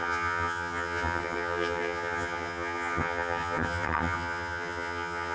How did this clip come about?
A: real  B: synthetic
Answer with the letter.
B